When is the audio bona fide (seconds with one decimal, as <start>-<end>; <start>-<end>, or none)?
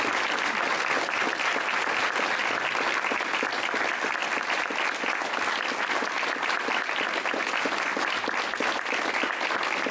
0.0-9.9